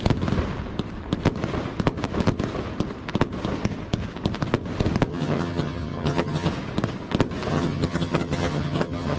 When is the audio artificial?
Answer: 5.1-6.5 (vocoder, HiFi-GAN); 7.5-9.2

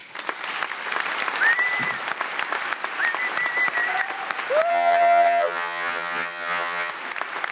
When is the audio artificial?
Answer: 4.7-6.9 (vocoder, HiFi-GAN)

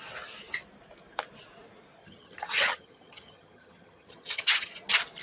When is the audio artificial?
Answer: 2.0-4.7 (vocoder, HiFi-GAN)

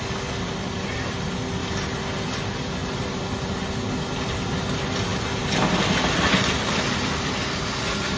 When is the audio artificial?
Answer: none

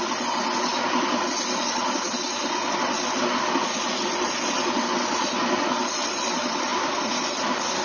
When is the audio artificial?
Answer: none

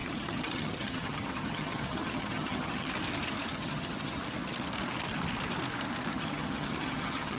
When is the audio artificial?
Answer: 0.0-2.9 (vocoder, HiFi-GAN); 3.5-4.2; 6.1-7.4